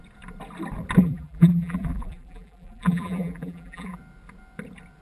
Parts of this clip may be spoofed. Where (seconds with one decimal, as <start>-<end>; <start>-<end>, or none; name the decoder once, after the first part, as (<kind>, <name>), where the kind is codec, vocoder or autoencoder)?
1.0-4.0 (vocoder, BigVGAN v2)